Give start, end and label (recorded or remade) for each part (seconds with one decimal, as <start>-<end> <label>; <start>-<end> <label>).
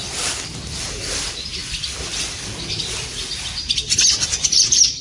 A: 0.0-5.0 recorded